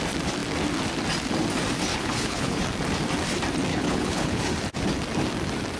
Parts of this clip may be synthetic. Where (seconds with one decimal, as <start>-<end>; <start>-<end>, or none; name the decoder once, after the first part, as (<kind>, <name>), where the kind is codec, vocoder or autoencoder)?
1.9-2.6 (codec, HILCodec); 3.7-4.4